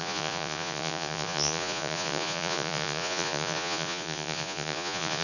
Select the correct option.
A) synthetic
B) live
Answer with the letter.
A